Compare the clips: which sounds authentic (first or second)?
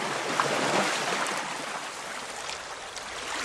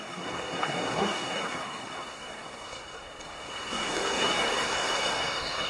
first